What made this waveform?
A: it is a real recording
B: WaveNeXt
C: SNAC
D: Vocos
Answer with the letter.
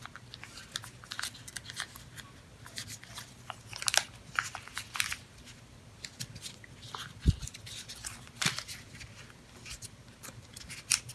A